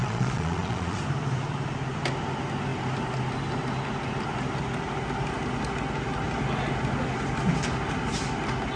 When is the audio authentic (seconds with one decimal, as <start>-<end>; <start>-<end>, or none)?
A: 1.0-8.8